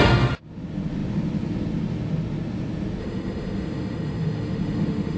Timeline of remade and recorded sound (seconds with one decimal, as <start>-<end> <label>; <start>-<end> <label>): 0.0-3.0 recorded; 3.0-5.2 remade